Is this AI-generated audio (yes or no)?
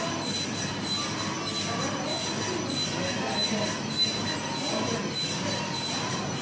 no